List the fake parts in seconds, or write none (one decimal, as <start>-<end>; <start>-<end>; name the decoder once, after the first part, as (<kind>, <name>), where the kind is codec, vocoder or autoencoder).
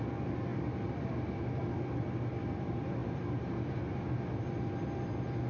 3.0-4.1 (vocoder, BigVGAN v2)